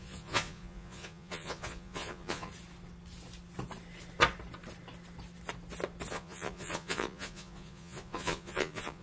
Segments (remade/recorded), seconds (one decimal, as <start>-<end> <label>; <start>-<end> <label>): 0.0-2.5 remade; 2.5-6.1 recorded; 6.1-9.0 remade